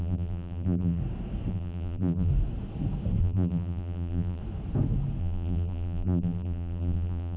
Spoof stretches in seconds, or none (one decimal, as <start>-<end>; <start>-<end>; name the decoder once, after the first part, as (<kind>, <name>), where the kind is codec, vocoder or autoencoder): 0.0-1.0 (vocoder, BigVGAN v2); 1.5-2.3; 3.2-4.4; 5.2-7.4